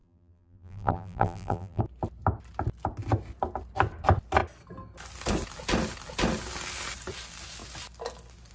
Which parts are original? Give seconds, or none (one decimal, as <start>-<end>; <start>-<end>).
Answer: 1.8-8.5